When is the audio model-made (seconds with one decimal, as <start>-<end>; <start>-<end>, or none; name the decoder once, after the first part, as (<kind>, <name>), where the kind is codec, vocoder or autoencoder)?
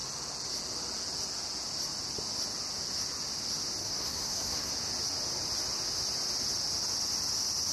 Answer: 3.8-4.7 (codec, SNAC)